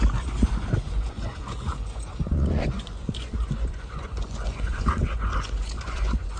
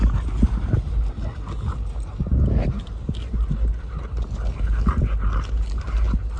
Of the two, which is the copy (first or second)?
first